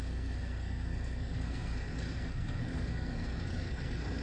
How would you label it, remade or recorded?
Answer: remade